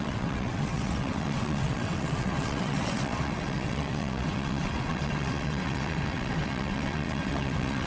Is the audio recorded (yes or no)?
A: no